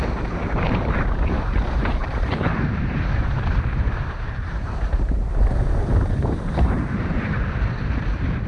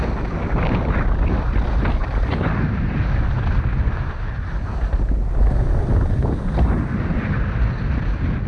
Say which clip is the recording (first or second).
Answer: second